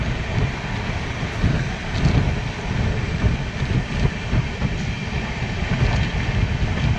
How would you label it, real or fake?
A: real